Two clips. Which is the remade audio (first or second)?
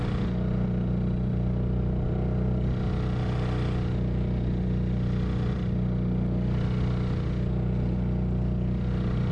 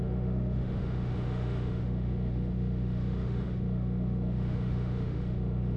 second